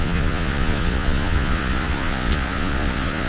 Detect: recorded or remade remade